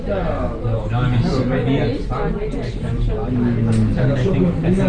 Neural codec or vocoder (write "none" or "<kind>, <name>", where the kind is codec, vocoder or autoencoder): none